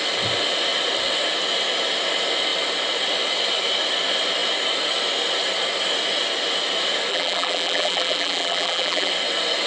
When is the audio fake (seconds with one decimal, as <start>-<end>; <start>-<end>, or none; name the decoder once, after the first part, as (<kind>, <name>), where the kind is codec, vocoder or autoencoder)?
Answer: 7.1-9.1 (vocoder, BigVGAN v2)